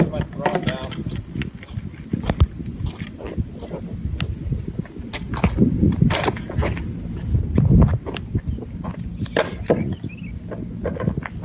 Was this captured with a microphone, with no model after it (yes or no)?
yes